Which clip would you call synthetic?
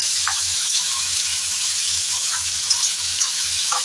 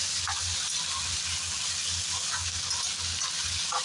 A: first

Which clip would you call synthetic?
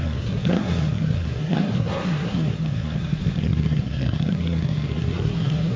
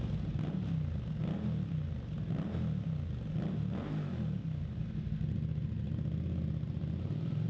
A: first